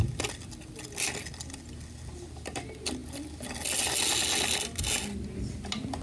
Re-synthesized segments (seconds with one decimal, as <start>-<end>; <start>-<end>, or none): none